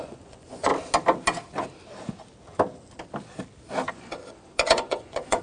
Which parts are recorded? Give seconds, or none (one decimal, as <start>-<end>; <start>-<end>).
0.7-3.9